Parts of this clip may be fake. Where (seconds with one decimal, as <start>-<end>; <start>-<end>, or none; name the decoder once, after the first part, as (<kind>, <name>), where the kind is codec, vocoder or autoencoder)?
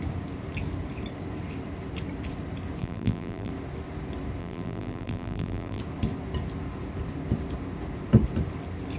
2.8-3.5 (vocoder, BigVGAN v2); 4.4-5.8